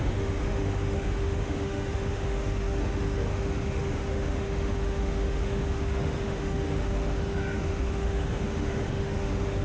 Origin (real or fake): fake